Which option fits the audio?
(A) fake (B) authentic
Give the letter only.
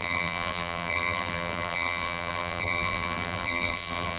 A